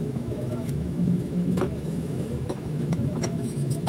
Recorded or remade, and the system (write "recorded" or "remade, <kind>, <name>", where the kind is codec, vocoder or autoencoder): remade, autoencoder, DAC-VAE